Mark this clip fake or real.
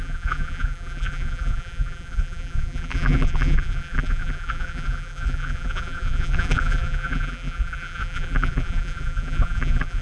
fake